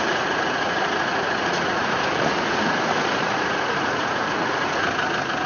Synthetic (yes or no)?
yes